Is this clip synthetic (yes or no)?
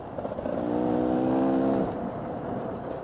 no